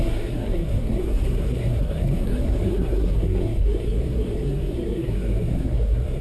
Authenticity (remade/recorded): remade